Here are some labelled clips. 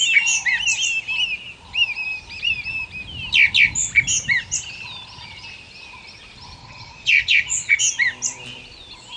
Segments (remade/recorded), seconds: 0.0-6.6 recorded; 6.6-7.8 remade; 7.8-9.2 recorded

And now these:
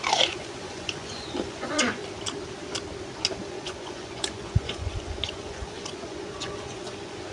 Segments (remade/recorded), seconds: 0.0-2.0 remade; 2.0-3.5 recorded; 3.5-7.3 remade